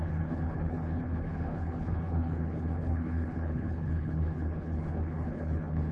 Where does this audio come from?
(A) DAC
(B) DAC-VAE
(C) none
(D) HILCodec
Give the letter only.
D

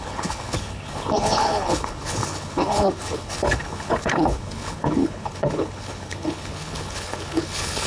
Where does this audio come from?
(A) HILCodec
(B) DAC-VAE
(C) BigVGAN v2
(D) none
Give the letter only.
A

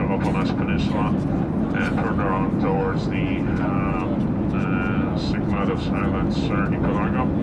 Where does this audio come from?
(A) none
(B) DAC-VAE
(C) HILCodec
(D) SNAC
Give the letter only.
A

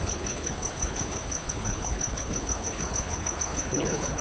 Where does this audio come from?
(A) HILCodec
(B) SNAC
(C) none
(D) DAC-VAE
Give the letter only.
A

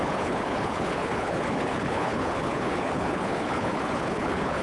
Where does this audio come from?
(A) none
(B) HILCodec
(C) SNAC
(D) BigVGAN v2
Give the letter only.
B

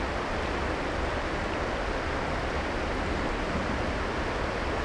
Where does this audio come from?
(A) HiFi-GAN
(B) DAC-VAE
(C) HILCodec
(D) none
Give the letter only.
D